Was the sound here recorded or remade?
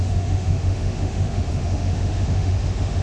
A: remade